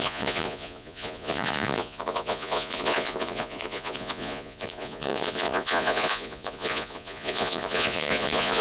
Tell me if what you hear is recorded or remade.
remade